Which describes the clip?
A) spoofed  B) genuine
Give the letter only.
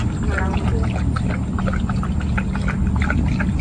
B